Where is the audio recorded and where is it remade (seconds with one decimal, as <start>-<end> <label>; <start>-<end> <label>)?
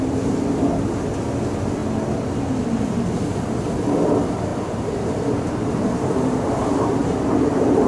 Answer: 0.0-4.5 recorded; 4.5-7.3 remade; 7.3-7.9 recorded